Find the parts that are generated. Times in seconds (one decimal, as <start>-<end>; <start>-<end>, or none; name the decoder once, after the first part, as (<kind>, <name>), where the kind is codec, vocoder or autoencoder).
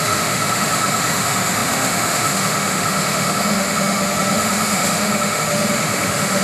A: 0.0-6.4 (autoencoder, DAC-VAE)